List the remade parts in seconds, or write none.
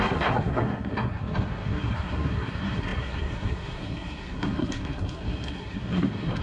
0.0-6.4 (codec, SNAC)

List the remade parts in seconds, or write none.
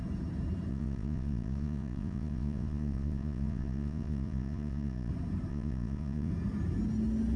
0.7-5.1 (vocoder, Vocos); 5.5-6.3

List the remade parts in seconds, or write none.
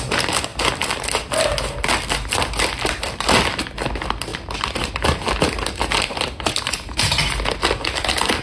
4.3-4.9 (vocoder, BigVGAN v2)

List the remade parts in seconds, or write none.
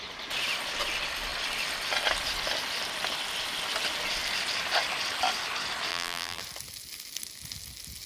5.9-6.4 (vocoder, BigVGAN v2)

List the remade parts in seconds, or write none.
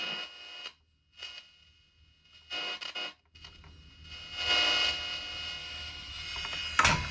5.6-6.2 (autoencoder, DAC-VAE)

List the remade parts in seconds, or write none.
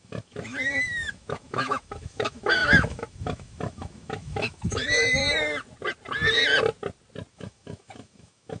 0.0-5.2 (autoencoder, DAC-VAE); 7.3-8.6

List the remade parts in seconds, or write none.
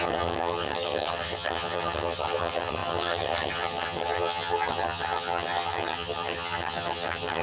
0.0-7.4 (vocoder, HiFi-GAN)